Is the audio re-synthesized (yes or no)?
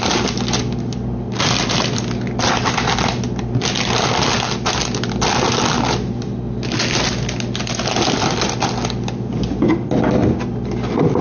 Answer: no